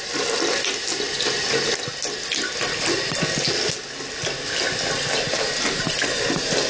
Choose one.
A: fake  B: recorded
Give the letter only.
B